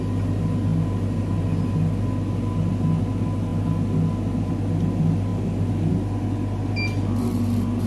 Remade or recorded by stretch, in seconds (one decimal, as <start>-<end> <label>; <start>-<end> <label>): 0.0-7.9 recorded

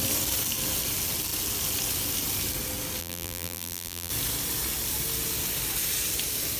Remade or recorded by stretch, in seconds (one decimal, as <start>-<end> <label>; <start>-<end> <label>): 0.0-3.0 recorded; 3.0-4.1 remade; 4.1-6.6 recorded